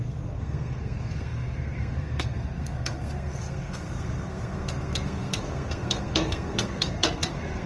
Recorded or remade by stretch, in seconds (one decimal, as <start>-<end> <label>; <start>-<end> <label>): 0.0-7.7 remade